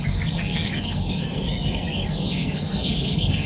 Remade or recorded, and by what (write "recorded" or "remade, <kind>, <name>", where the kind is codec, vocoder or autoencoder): remade, codec, SNAC